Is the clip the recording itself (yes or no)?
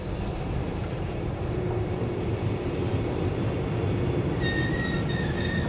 yes